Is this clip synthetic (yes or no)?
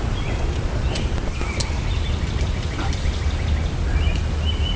no